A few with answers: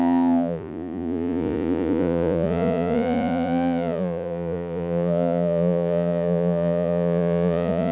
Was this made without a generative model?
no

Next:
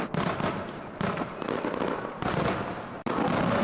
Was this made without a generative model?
yes